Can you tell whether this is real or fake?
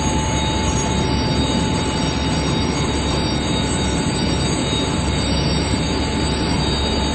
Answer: real